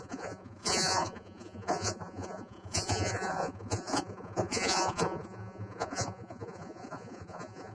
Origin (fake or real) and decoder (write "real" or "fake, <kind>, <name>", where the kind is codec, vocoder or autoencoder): fake, vocoder, Vocos